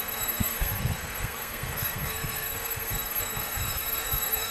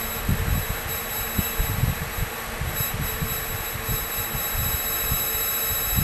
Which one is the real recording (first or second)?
second